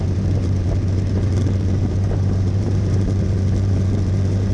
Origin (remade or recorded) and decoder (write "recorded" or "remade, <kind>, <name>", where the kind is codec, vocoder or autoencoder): remade, vocoder, BigVGAN v2